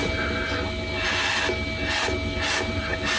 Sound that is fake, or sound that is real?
real